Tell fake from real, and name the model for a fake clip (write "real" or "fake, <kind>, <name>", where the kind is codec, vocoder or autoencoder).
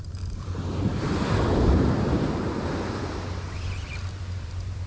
fake, vocoder, BigVGAN v2